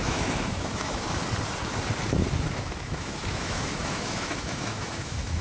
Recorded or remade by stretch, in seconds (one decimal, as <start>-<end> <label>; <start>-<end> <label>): 0.0-1.2 remade; 1.2-2.5 recorded; 2.5-5.4 remade